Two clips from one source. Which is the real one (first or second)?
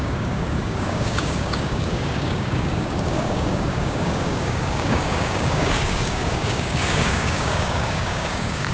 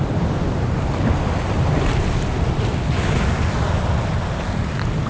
second